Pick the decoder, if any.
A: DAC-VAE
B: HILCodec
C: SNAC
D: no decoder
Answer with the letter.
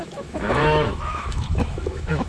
A